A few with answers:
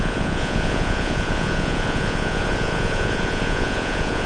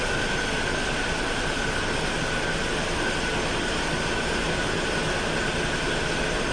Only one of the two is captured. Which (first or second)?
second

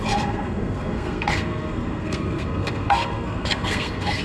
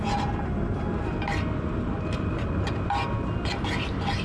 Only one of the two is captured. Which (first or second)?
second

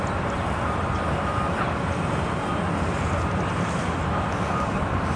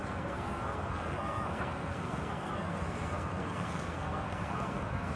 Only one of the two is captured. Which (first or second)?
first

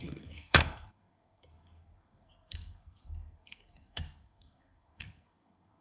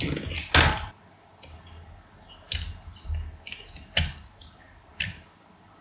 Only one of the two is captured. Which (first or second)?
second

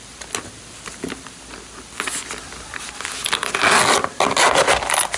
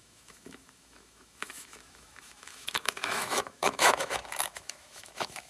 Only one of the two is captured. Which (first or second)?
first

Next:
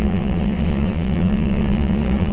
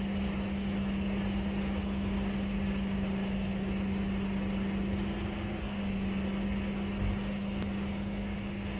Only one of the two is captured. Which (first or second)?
second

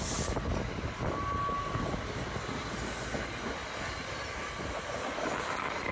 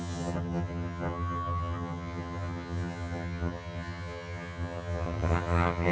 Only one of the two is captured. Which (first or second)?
first